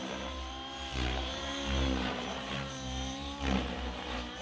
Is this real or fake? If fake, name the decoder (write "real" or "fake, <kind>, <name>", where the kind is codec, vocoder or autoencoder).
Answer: fake, vocoder, BigVGAN v2